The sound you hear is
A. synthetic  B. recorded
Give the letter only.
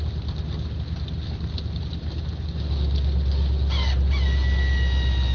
B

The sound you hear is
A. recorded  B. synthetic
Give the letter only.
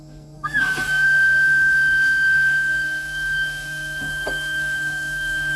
B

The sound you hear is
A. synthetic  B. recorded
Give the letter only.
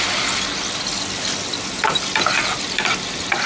B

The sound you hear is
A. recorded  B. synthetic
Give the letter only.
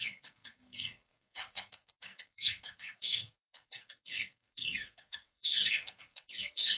B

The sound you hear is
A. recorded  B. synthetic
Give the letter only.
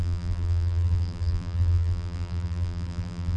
B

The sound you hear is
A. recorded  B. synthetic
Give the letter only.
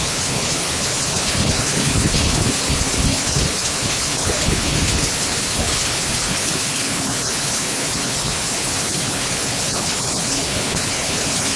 B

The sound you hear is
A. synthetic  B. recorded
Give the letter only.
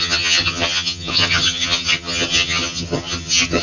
A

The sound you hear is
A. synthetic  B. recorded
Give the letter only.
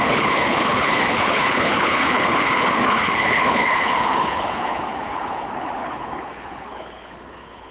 A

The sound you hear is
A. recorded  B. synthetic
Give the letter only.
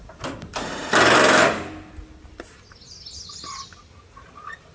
A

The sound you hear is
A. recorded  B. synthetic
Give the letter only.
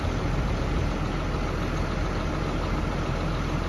A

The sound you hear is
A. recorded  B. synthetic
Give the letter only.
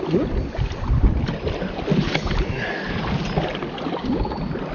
A